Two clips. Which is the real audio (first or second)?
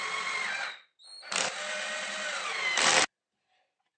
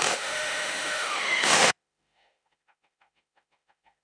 first